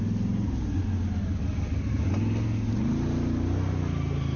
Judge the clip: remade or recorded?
recorded